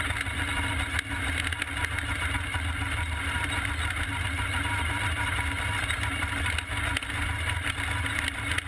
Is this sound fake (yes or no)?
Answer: no